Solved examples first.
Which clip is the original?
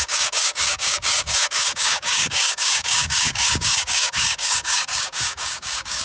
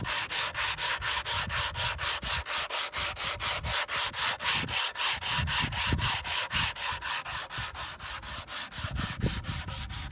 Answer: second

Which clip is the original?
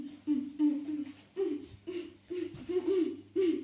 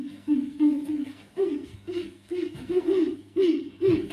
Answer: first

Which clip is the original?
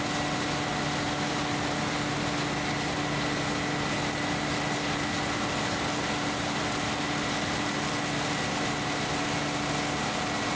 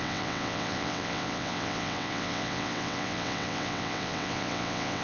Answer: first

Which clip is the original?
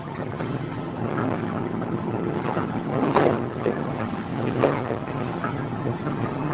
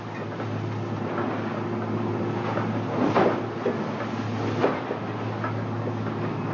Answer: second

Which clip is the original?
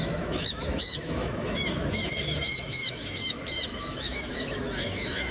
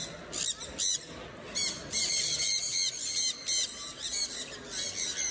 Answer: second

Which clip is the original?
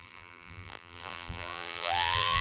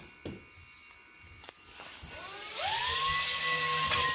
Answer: second